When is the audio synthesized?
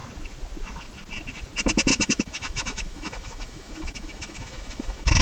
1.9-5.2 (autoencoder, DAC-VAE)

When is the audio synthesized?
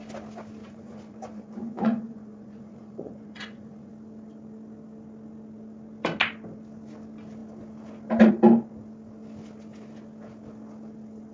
0.6-3.9 (vocoder, Vocos)